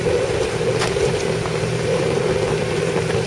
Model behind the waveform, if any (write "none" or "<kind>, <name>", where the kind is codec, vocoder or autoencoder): vocoder, BigVGAN v2